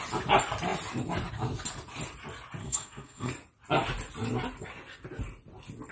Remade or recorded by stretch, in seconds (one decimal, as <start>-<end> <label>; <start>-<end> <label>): 0.0-2.6 recorded; 2.6-3.3 remade; 3.3-5.9 recorded